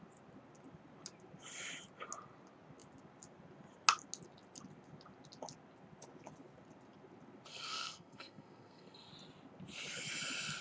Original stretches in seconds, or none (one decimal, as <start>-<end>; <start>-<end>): 0.0-7.5; 9.1-10.6